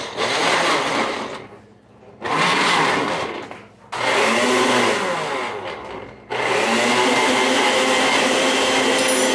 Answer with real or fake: real